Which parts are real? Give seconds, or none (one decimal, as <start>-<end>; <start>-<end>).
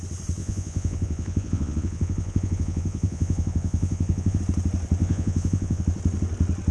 0.0-0.4; 4.4-5.0; 5.8-6.7